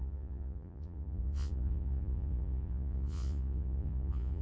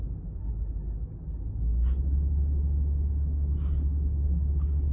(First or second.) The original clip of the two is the second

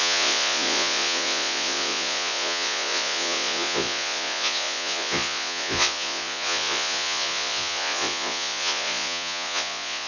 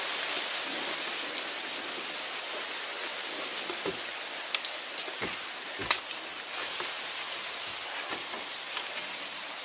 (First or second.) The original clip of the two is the second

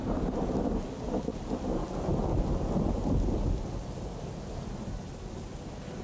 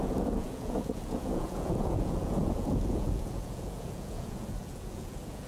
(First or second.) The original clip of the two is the first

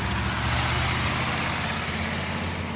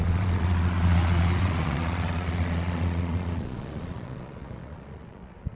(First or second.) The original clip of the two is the first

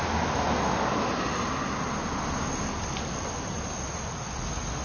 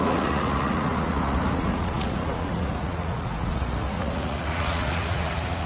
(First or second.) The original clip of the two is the first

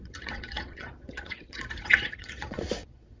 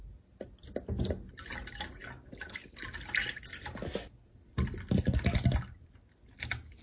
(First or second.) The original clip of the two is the second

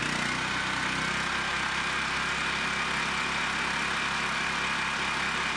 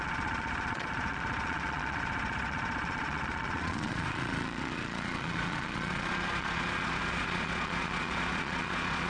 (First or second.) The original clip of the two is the first